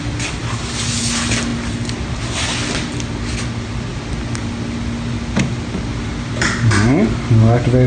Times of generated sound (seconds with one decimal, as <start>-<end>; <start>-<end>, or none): none